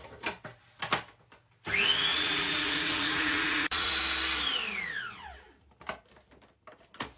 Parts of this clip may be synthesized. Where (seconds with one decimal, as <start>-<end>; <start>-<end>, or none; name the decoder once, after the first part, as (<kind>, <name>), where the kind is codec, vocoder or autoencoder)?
2.1-3.9 (vocoder, Vocos)